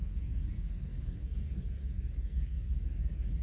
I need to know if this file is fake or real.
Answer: fake